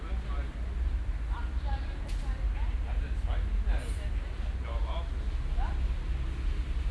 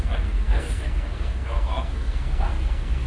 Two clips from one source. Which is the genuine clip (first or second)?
first